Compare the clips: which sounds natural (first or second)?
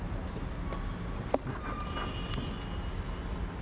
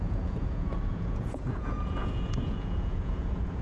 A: first